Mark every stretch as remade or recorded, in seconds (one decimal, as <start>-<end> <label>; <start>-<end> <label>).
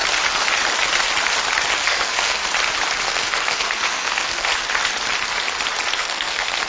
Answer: 0.0-1.8 recorded; 1.8-2.4 remade; 2.4-3.0 recorded; 3.0-4.5 remade; 4.5-6.0 recorded; 6.0-6.7 remade